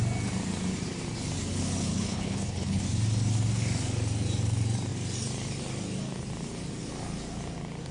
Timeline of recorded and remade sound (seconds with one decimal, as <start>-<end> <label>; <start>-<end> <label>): 0.0-1.9 recorded; 1.9-2.8 remade; 2.8-7.9 recorded